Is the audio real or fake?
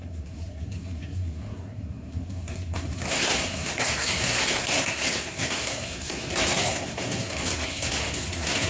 fake